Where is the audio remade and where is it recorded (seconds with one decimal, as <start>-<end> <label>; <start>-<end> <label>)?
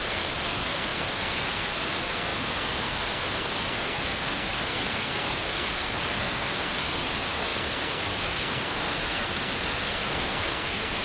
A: 0.0-11.0 remade